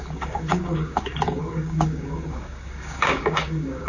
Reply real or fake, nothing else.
fake